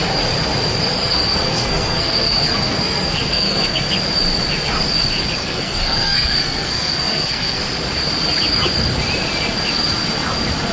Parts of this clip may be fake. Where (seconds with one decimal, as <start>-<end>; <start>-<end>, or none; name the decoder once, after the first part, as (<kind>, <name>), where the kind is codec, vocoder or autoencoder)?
1.0-3.9 (codec, SNAC); 5.4-7.6

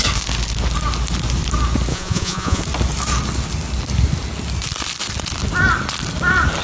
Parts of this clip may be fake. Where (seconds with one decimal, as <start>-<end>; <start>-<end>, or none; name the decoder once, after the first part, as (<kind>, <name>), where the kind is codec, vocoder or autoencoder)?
1.9-2.6 (vocoder, Vocos)

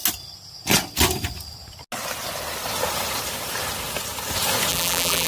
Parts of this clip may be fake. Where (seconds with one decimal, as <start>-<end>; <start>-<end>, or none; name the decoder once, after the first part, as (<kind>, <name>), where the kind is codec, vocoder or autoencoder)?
4.7-5.3 (vocoder, BigVGAN v2)

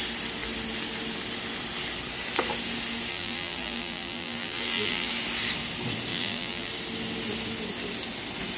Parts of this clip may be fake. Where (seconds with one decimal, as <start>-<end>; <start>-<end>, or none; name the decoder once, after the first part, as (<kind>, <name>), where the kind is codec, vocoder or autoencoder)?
3.1-5.1 (vocoder, BigVGAN v2); 6.1-6.7

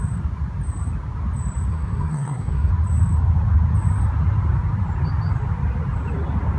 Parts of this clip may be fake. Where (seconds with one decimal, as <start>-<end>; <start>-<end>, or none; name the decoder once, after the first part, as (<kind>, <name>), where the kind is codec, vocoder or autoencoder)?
1.7-2.7 (codec, SNAC)

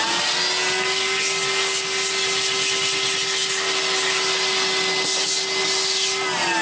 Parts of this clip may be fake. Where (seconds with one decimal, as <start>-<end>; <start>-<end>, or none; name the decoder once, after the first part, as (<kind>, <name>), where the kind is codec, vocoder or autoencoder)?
none

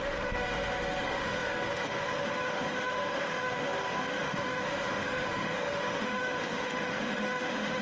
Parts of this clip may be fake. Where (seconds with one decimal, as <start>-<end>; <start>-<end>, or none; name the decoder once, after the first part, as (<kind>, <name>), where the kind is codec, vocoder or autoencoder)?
0.0-7.8 (autoencoder, DAC-VAE)

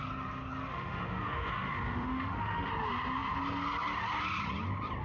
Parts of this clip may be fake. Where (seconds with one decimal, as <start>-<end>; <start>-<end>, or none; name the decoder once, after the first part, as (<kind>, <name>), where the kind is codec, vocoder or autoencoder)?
0.7-2.7 (autoencoder, DAC-VAE)